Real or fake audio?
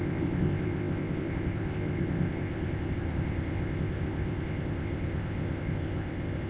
fake